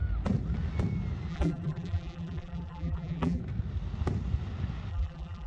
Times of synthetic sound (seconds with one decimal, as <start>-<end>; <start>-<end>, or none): 1.3-3.4; 4.9-5.5